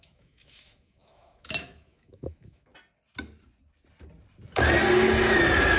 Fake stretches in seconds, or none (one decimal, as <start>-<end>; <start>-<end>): 0.0-2.7